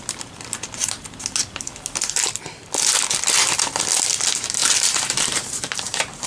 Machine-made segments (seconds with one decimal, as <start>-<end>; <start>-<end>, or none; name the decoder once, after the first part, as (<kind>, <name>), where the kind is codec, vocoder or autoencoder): 4.6-6.3 (vocoder, BigVGAN v2)